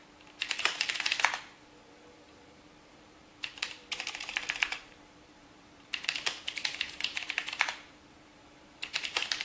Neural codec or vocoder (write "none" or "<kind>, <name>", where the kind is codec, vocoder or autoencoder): vocoder, BigVGAN v2